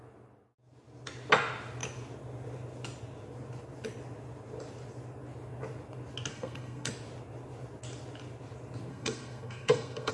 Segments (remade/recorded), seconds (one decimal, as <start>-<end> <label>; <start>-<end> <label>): 0.0-6.3 recorded; 6.3-6.9 remade; 6.9-8.9 recorded; 8.9-10.1 remade